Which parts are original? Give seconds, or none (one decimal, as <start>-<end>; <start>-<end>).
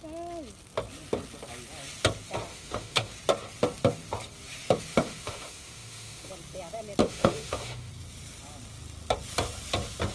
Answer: 0.0-2.5; 3.1-4.9; 6.3-7.0; 7.9-10.1